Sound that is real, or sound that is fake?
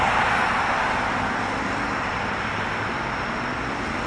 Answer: real